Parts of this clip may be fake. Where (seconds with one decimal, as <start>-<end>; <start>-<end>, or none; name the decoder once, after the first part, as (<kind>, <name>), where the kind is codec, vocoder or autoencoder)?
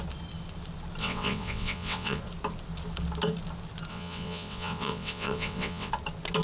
1.0-2.2 (vocoder, WaveNeXt); 3.9-5.9